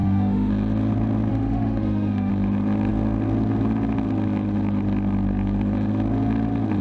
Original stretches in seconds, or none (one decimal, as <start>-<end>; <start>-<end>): 0.5-1.3; 2.3-6.8